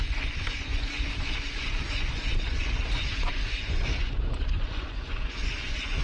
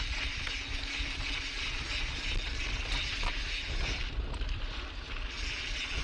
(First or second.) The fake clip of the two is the first